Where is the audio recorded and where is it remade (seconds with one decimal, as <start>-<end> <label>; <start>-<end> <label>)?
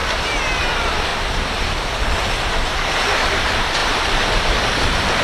0.0-0.6 recorded; 0.6-1.1 remade; 1.1-2.6 recorded; 2.6-5.2 remade